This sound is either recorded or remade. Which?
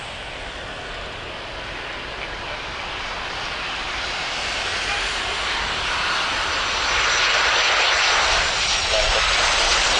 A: recorded